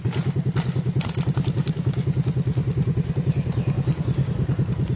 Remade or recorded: recorded